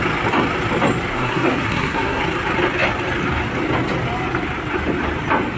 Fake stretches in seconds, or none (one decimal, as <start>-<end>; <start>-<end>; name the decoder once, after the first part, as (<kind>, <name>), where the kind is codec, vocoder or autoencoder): 1.1-2.2 (codec, SNAC)